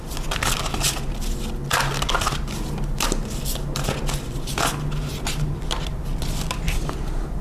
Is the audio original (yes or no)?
yes